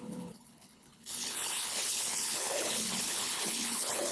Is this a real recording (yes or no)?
no